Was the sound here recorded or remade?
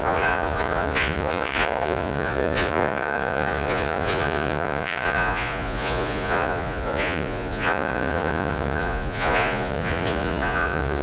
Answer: remade